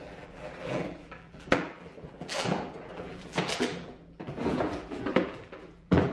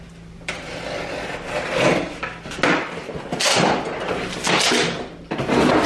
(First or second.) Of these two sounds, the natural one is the second